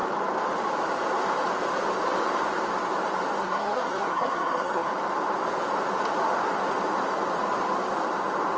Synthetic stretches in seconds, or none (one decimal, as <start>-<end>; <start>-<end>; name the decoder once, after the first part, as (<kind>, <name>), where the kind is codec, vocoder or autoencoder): 3.4-4.9 (codec, SNAC)